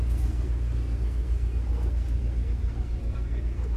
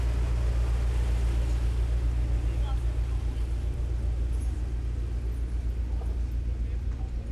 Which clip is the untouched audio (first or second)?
second